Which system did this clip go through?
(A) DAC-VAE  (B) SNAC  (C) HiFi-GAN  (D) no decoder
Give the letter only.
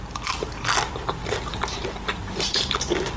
D